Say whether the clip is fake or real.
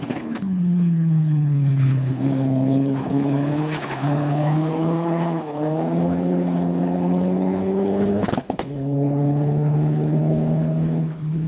fake